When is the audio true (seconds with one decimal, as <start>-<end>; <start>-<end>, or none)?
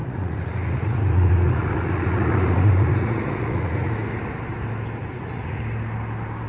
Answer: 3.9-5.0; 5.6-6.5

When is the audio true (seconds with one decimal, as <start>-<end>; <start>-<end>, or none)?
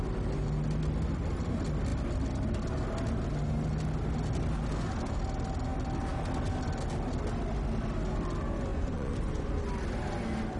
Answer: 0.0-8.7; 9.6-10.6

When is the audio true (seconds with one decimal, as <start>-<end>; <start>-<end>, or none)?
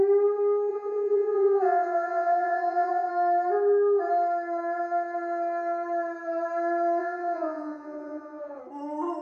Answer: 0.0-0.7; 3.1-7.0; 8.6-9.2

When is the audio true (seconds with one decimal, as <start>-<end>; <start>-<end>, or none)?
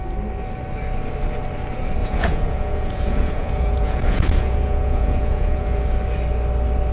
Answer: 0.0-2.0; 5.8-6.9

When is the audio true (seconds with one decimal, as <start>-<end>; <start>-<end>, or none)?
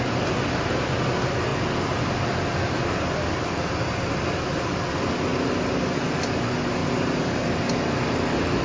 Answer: 0.0-8.6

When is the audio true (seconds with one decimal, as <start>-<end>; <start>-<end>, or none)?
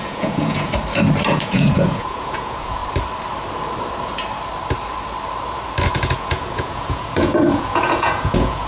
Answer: 0.7-1.3; 2.8-5.9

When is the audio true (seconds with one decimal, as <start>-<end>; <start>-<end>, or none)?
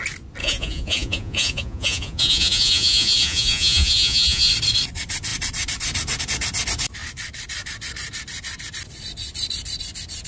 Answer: 0.0-0.4; 4.5-10.3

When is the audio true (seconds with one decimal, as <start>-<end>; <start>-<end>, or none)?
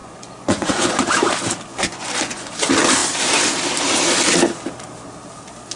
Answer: 1.0-1.7; 2.5-5.8